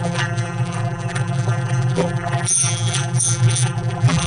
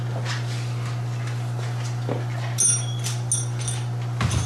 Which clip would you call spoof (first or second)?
first